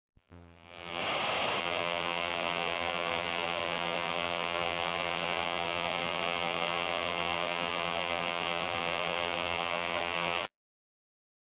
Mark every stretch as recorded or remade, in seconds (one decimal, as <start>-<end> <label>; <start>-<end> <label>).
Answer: 0.0-1.0 remade; 1.0-1.6 recorded; 1.6-11.5 remade